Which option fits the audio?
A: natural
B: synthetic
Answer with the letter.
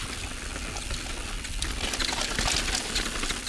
A